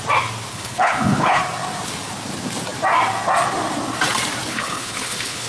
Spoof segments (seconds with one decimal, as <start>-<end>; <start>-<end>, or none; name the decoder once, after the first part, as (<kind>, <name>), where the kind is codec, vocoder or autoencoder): 0.5-1.4 (codec, HILCodec); 4.5-5.5